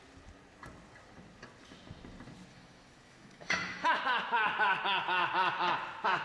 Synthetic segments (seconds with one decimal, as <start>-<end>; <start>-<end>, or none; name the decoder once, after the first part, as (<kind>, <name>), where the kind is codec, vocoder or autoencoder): 2.5-4.0 (autoencoder, DAC-VAE)